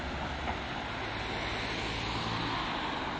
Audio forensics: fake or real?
real